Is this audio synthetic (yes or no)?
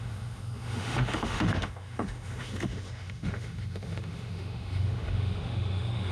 yes